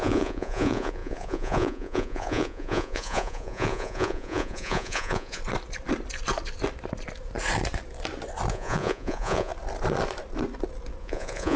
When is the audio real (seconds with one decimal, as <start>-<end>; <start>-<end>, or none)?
5.4-8.5; 9.5-11.0